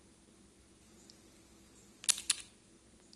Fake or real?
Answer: real